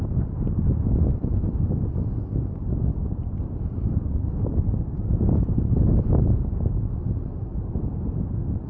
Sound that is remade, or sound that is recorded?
recorded